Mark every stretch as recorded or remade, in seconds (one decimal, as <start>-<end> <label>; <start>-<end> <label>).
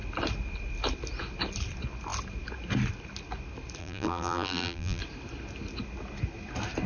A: 0.0-3.8 recorded; 3.8-5.0 remade; 5.0-6.9 recorded